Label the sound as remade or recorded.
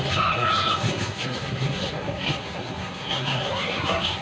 remade